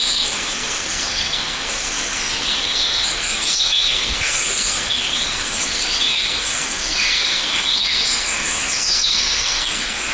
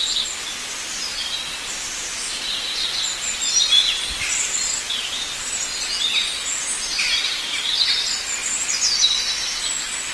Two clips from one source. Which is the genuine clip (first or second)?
second